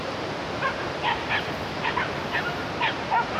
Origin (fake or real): real